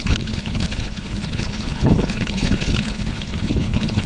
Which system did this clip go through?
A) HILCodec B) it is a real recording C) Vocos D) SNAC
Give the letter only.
A